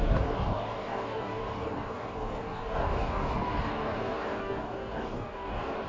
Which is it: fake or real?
fake